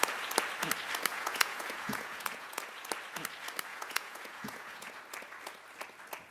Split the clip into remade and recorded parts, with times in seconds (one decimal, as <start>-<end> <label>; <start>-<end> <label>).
0.0-1.1 recorded; 1.1-2.6 remade; 2.6-3.7 recorded; 3.7-4.9 remade; 4.9-6.3 recorded